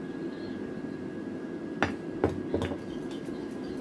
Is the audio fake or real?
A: real